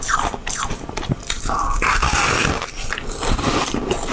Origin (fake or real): real